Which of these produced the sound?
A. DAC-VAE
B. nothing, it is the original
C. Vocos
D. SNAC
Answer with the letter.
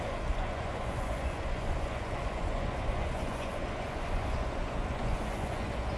C